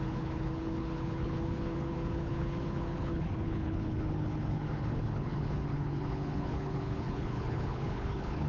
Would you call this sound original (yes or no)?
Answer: no